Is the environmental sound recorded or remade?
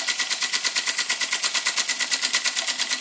recorded